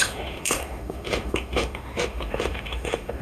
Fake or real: fake